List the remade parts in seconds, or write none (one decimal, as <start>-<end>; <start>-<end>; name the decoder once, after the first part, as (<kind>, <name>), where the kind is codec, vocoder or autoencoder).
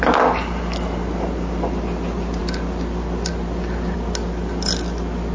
none